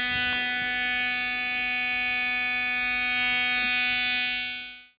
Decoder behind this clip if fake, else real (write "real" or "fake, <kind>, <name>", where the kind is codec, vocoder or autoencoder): real